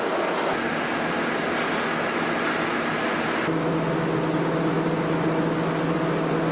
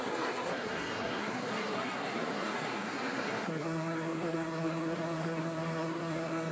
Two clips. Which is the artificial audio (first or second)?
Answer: second